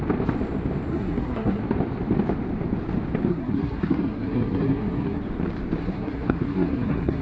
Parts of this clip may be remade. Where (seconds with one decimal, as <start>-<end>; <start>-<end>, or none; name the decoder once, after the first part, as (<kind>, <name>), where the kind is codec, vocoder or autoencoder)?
0.9-1.6 (codec, SNAC); 3.3-5.2; 5.8-7.2